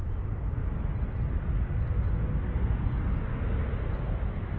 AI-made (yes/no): no